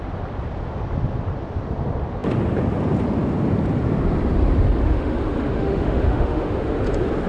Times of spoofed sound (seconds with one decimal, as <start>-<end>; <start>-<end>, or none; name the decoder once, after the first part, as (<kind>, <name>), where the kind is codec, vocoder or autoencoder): 4.8-6.8 (autoencoder, DAC-VAE)